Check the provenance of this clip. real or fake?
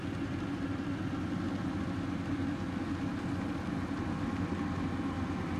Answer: real